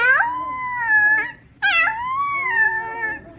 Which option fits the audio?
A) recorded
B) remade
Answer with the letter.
A